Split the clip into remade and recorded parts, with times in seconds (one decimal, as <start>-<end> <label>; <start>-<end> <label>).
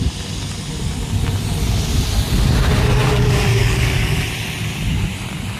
0.0-3.0 recorded; 3.0-4.2 remade; 4.2-5.6 recorded